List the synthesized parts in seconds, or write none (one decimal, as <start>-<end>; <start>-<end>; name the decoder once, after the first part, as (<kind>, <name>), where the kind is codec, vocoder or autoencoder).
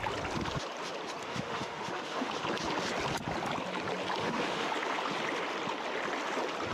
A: 1.2-2.3 (autoencoder, DAC-VAE); 4.2-4.7